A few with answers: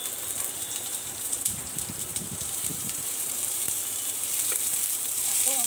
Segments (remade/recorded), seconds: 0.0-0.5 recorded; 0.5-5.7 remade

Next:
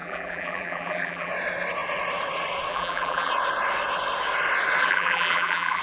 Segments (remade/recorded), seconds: 0.0-1.3 remade; 1.3-2.7 recorded; 2.7-3.3 remade; 3.3-4.8 recorded; 4.8-5.8 remade

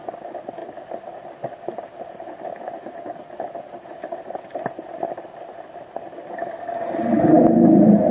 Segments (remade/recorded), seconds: 0.0-8.1 recorded